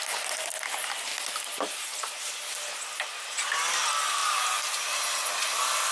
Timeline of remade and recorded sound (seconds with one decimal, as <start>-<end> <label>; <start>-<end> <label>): 0.0-1.1 recorded; 1.1-3.1 remade; 3.1-4.2 recorded; 4.2-5.2 remade; 5.2-5.9 recorded